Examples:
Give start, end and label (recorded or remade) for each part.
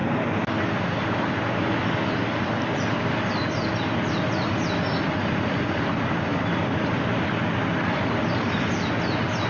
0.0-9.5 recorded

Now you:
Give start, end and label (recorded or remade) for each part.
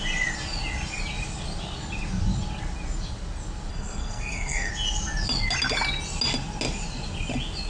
0.0-3.7 recorded; 3.7-4.7 remade; 4.7-7.7 recorded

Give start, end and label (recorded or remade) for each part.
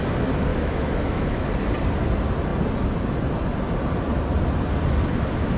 0.0-0.5 recorded; 0.5-1.5 remade; 1.5-5.6 recorded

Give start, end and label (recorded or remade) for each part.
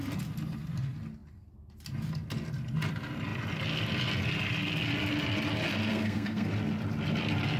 0.0-5.9 recorded; 5.9-6.5 remade; 6.5-7.6 recorded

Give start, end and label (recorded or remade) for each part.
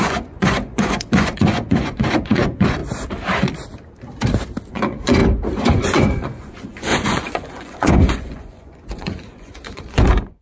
0.0-2.8 remade; 2.8-4.7 recorded; 4.7-5.2 remade; 5.2-5.7 recorded; 5.7-10.4 remade